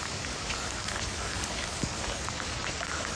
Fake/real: fake